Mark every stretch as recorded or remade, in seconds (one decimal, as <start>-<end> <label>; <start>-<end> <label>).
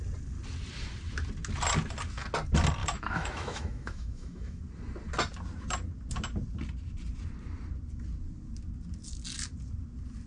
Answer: 0.0-2.8 recorded; 2.8-4.6 remade; 4.6-10.3 recorded